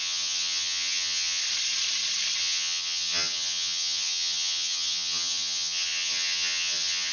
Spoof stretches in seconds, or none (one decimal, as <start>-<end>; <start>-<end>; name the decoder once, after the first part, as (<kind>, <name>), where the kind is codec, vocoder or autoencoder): 0.0-1.4 (vocoder, HiFi-GAN); 2.4-7.1